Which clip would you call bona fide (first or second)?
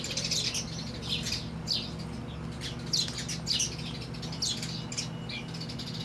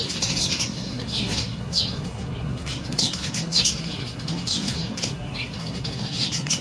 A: first